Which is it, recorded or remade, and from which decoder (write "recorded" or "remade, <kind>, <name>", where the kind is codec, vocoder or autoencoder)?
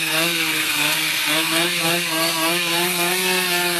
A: remade, codec, SNAC